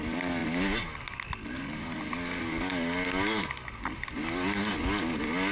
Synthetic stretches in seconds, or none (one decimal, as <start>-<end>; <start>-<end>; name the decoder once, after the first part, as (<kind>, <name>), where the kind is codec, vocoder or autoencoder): none